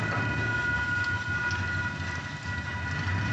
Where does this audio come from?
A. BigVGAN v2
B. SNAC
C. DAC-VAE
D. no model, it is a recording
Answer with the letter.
D